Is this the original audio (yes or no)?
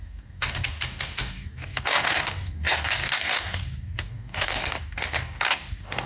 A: no